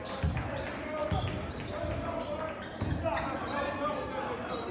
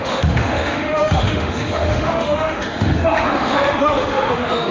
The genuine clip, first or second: first